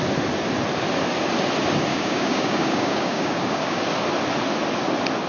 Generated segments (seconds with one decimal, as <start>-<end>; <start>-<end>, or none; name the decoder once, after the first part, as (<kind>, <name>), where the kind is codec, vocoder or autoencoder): 1.9-3.8 (codec, DAC)